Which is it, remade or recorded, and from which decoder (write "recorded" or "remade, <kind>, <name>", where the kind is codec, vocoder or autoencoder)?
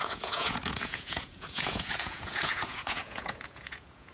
remade, vocoder, Vocos